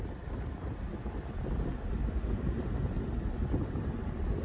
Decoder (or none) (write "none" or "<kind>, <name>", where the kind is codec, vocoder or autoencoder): none